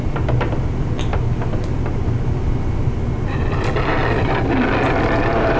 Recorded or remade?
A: recorded